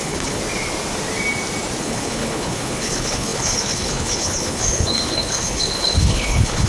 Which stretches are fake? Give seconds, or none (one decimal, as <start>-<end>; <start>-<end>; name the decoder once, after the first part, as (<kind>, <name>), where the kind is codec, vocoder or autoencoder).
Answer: 0.0-0.4 (codec, HILCodec); 1.8-6.7